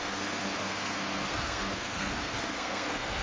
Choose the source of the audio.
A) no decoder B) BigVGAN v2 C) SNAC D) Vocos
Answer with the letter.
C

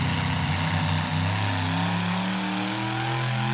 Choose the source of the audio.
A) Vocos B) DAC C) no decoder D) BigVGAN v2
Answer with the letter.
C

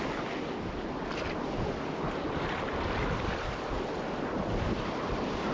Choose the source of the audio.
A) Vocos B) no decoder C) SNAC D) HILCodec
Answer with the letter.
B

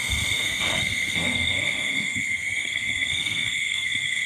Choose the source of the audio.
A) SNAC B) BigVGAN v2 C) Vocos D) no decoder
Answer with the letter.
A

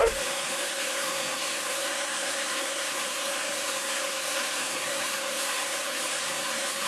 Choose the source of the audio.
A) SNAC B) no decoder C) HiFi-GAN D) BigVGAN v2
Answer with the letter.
A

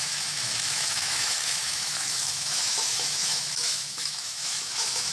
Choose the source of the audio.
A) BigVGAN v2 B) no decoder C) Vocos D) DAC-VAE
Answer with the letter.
D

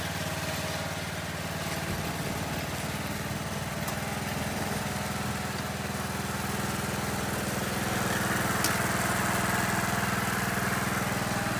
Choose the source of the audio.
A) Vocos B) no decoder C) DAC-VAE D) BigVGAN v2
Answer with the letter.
B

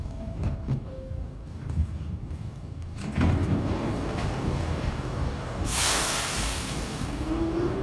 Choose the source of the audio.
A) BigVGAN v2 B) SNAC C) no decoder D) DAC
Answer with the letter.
D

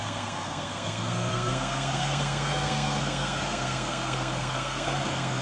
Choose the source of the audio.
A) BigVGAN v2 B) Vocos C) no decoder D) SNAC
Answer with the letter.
D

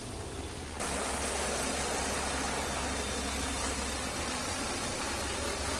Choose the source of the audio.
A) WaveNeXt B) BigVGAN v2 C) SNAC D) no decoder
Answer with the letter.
D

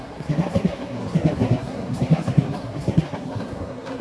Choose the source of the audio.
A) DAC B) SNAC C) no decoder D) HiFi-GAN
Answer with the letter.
B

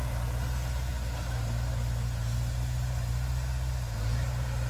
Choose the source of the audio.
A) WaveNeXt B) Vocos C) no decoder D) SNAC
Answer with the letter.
C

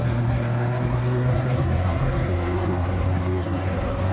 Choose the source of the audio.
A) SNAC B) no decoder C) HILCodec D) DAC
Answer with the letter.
A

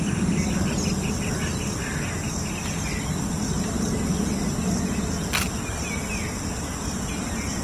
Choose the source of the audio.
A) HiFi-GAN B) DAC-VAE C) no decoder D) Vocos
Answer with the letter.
C